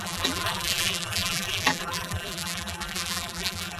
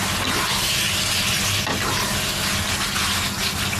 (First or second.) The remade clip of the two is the first